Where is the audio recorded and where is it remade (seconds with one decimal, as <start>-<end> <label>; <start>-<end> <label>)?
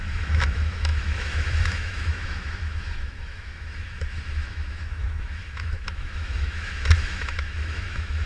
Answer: 0.0-8.3 remade